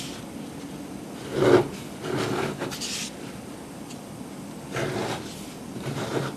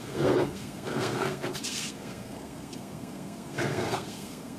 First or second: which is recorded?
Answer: first